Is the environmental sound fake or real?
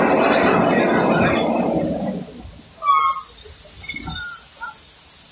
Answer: real